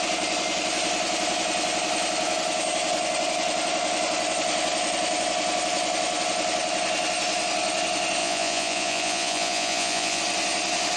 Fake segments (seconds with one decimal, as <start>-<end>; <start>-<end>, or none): 8.2-10.2

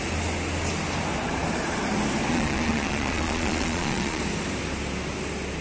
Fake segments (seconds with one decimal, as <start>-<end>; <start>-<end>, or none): 2.3-4.2

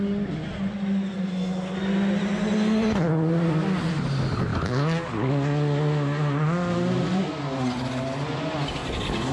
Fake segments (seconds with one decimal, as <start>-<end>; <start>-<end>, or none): none

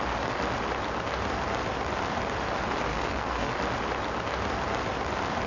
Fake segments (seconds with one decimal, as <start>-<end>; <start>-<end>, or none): 2.9-3.5

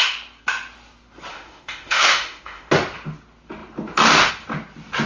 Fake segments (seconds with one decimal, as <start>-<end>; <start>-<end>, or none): 1.3-2.7